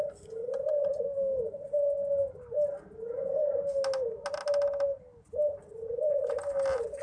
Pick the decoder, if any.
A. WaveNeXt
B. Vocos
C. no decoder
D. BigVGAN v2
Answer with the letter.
C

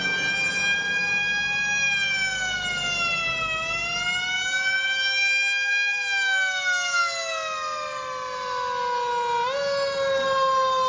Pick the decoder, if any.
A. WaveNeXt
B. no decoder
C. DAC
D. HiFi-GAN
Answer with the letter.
B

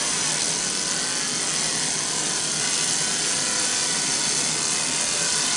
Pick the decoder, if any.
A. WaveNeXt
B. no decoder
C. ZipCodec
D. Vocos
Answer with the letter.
B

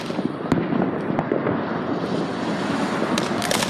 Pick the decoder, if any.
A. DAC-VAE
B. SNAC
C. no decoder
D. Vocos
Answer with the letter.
C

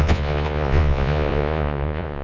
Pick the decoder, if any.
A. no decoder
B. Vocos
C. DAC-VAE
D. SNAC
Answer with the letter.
B